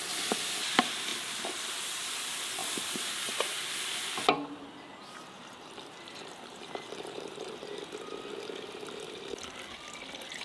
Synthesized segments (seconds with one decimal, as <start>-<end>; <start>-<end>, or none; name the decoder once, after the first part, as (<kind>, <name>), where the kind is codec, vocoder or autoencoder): 1.1-2.2 (vocoder, BigVGAN v2); 2.6-7.8